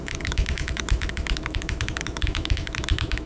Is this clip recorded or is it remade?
remade